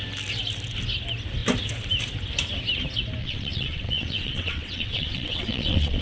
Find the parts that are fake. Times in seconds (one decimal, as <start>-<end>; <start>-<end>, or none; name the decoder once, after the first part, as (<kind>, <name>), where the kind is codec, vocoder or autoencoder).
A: 3.2-6.0 (vocoder, WaveNeXt)